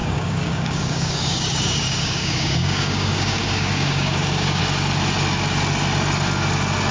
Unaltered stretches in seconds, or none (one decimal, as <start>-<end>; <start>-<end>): 4.6-6.9